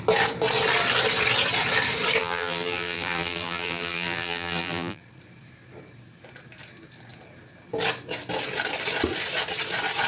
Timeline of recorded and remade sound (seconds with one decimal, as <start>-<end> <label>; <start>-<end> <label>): 0.0-2.2 recorded; 2.2-5.0 remade; 5.0-10.1 recorded

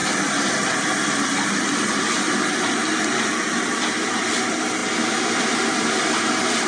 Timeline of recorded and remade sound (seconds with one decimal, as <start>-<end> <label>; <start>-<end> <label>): 0.0-4.8 recorded; 4.8-6.0 remade; 6.0-6.7 recorded

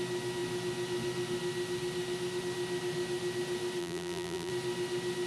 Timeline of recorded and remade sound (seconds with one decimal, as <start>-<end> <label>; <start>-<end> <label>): 0.0-3.8 recorded; 3.8-4.5 remade; 4.5-5.3 recorded

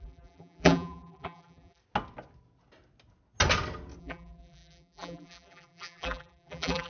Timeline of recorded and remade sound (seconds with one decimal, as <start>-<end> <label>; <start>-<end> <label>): 0.0-1.8 remade; 1.8-4.0 recorded; 4.0-6.9 remade

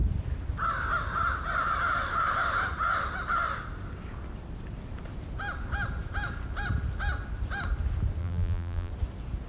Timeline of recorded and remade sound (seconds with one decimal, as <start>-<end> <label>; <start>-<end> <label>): 0.0-8.2 recorded; 8.2-8.9 remade; 8.9-9.5 recorded

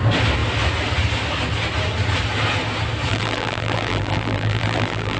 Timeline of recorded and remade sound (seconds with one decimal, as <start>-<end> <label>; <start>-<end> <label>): 0.0-3.1 recorded; 3.1-5.2 remade

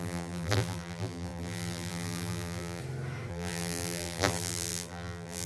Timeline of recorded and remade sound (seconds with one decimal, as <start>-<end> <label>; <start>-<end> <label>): 0.0-2.8 remade; 2.8-3.3 recorded; 3.3-5.5 remade

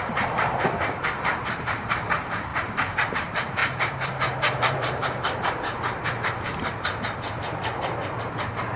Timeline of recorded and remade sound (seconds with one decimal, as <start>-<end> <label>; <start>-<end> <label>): 0.0-2.5 remade; 2.5-3.1 recorded; 3.1-8.8 remade